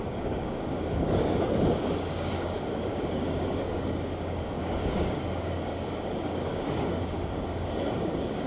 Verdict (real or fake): fake